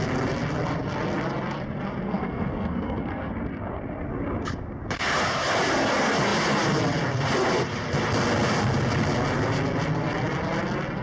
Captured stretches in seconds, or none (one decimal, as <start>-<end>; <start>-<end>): 0.0-2.1; 3.3-11.0